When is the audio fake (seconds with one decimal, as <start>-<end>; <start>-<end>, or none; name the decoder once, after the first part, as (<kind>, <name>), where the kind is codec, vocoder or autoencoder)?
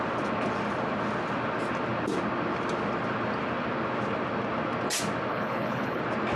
5.3-6.0 (codec, HILCodec)